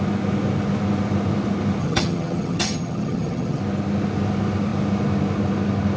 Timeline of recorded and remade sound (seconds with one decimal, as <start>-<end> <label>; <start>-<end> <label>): 0.0-1.8 recorded; 1.8-3.6 remade; 3.6-6.0 recorded